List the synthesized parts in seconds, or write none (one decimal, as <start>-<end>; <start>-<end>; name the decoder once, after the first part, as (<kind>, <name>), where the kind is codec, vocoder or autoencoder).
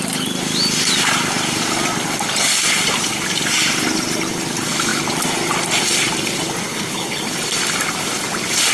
6.7-7.2 (codec, HILCodec)